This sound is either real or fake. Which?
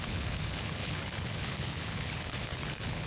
fake